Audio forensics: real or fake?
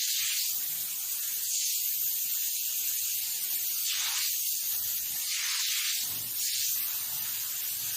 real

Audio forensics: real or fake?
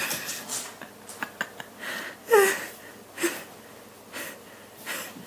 real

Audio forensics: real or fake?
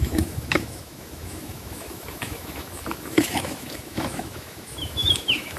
fake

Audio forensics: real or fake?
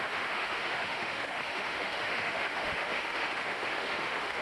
fake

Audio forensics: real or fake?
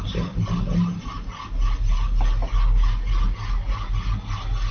real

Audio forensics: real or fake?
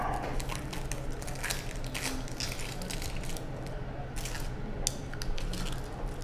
real